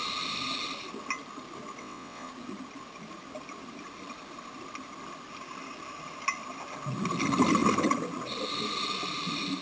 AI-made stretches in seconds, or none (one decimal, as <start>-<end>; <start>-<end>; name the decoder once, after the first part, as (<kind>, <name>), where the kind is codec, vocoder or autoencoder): 1.8-2.3 (vocoder, WaveNeXt)